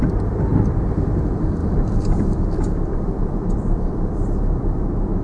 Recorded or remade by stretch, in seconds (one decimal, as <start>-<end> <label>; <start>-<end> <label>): 0.0-0.5 remade; 0.5-1.2 recorded; 1.2-1.6 remade; 1.6-2.2 recorded; 2.2-5.2 remade